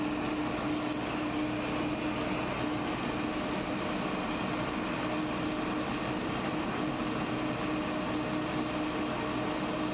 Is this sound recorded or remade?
recorded